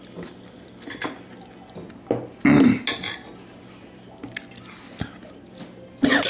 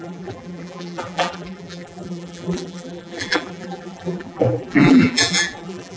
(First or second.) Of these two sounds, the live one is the first